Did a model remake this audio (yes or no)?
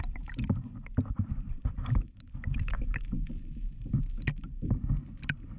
no